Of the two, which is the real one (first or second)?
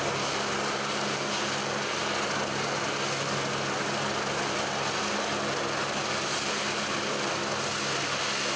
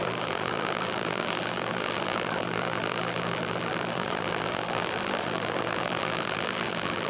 first